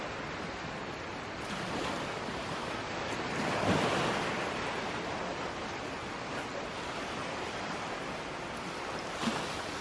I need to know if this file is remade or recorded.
recorded